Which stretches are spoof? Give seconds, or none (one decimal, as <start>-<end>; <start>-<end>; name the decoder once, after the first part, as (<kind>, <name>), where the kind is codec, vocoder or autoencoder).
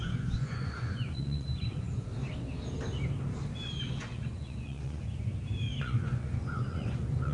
0.0-2.1 (vocoder, Vocos); 4.0-5.3; 5.8-7.3